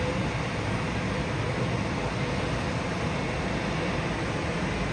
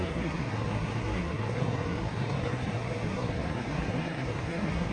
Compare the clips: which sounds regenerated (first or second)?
second